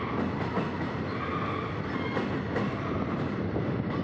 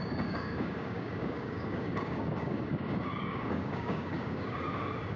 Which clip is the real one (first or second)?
first